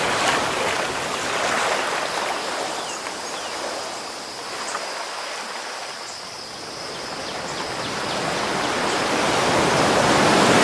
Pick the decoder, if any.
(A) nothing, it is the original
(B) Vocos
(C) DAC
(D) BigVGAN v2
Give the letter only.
A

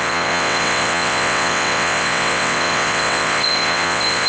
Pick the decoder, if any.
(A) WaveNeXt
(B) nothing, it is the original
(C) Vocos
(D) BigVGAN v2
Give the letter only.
A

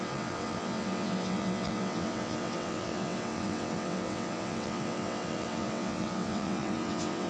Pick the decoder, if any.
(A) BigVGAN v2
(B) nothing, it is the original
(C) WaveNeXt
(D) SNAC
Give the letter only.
C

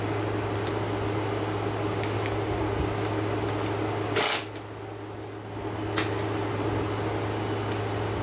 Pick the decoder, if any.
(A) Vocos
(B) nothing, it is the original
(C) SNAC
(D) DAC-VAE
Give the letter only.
B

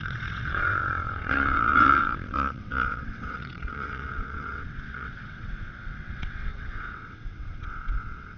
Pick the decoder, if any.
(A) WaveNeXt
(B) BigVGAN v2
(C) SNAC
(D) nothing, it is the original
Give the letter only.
A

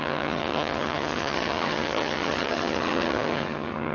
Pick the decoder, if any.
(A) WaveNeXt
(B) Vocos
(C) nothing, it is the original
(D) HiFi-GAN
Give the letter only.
D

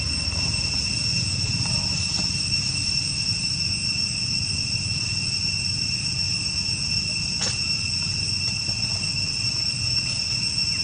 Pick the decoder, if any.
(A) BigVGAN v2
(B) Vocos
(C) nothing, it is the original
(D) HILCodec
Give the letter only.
C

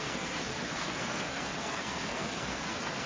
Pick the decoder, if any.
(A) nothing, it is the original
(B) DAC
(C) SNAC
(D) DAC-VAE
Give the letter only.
C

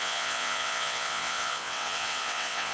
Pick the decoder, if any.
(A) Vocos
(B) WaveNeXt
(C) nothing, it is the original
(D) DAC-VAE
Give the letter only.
B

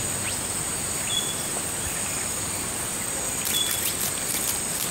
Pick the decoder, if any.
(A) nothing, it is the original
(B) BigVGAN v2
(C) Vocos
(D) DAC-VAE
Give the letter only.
A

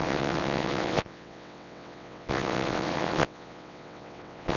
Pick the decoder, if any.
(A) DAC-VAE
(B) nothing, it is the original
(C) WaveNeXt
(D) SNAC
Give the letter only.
C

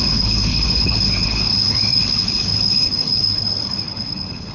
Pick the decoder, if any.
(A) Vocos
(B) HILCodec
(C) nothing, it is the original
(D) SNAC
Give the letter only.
B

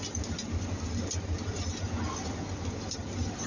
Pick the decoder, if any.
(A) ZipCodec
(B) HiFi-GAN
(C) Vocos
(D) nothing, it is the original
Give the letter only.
D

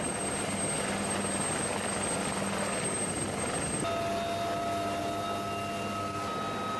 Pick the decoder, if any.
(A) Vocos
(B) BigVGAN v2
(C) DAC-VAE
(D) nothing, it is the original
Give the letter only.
D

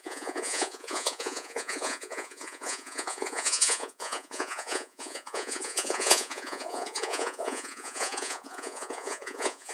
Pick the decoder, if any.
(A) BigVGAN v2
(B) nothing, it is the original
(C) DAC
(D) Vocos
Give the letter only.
D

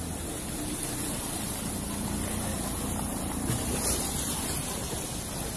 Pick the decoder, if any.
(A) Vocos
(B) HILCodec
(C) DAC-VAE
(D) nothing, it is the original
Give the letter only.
D